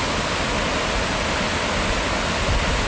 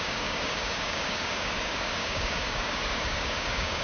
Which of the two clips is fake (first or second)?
second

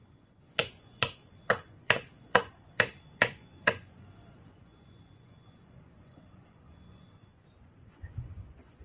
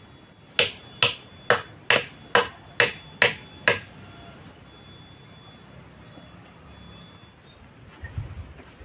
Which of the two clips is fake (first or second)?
first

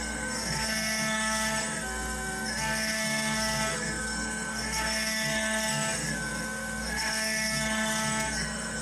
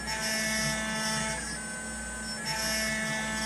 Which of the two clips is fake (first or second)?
first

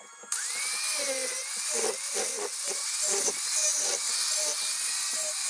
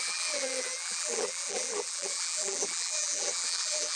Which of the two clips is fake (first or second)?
second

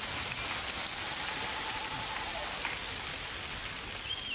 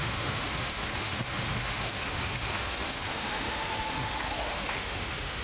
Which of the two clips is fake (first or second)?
second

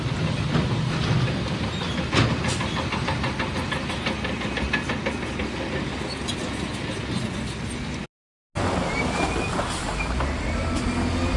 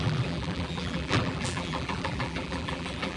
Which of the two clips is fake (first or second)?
second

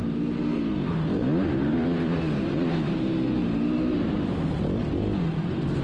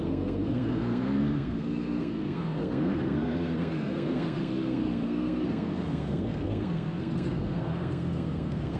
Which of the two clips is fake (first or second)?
second